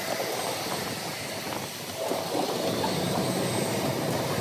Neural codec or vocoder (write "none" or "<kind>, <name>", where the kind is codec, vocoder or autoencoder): none